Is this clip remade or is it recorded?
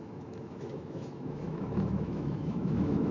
remade